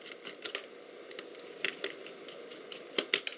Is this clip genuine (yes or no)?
yes